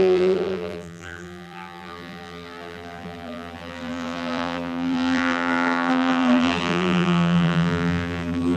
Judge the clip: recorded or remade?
remade